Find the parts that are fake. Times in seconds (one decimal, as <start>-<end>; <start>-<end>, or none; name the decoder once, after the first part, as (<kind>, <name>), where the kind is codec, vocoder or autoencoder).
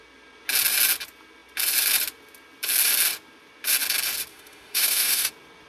4.3-5.3 (autoencoder, DAC-VAE)